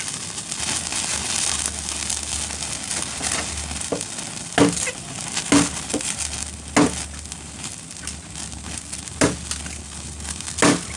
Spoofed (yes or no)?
no